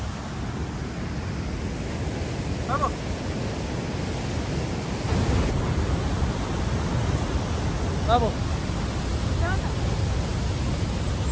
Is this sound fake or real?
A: real